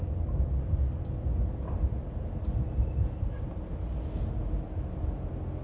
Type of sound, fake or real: real